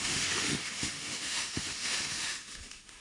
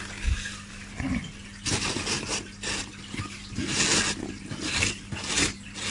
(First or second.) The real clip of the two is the second